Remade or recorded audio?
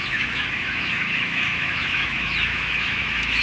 remade